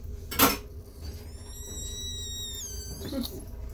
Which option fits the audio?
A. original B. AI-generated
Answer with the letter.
A